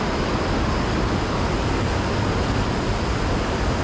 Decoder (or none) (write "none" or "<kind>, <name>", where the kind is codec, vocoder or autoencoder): none